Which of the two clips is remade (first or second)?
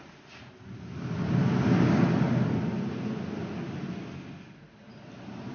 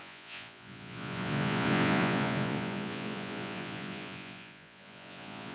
second